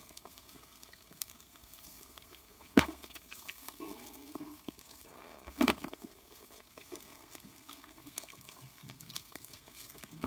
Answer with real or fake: fake